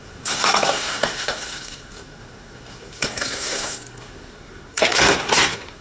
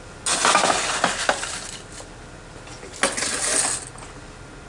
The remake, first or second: first